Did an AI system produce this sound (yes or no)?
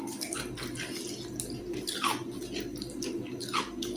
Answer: no